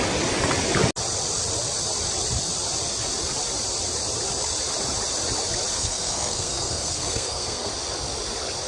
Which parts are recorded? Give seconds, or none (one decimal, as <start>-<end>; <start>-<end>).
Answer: 0.0-5.7; 7.7-8.7